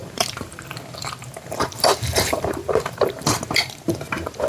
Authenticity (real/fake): fake